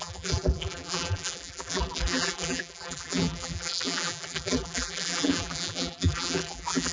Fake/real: fake